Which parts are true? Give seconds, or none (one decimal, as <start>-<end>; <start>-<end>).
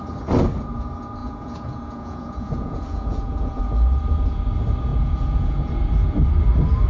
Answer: 0.0-1.2; 3.6-4.9; 5.7-6.9